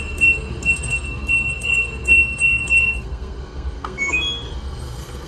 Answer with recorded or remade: remade